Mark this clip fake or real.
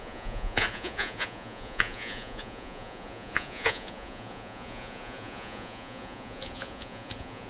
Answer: fake